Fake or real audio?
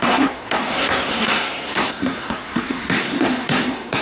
fake